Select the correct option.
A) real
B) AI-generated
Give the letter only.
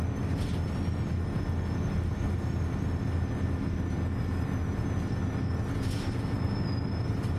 A